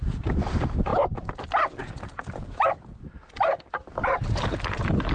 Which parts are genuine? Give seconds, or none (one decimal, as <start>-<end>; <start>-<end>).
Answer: 0.0-3.8